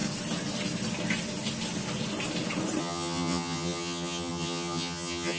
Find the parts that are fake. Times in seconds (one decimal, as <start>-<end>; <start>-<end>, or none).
2.8-5.4